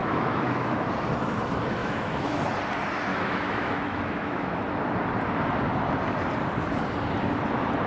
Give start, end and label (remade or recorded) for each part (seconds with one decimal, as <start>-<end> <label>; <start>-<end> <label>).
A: 0.0-0.9 remade; 0.9-1.8 recorded; 1.8-2.4 remade; 2.4-3.1 recorded; 3.1-4.6 remade; 4.6-7.9 recorded